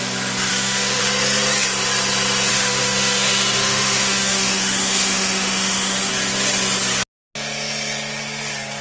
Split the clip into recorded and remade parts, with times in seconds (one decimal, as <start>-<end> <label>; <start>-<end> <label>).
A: 0.0-0.5 recorded; 0.5-1.0 remade; 1.0-2.5 recorded; 2.5-6.1 remade; 6.1-8.8 recorded